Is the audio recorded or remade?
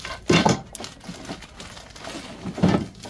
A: recorded